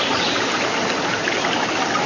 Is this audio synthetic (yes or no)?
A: no